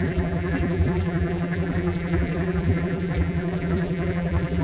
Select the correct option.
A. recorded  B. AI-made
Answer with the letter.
B